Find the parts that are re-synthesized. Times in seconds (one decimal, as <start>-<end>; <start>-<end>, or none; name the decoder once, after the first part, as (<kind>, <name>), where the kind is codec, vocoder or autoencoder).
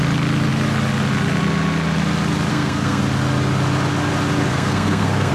2.5-3.0 (codec, SNAC); 4.5-5.3